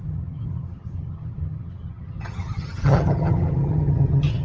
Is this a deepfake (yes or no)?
yes